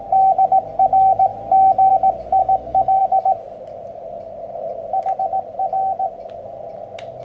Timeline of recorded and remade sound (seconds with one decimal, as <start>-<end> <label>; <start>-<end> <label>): 0.0-2.4 recorded; 2.4-3.0 remade; 3.0-7.2 recorded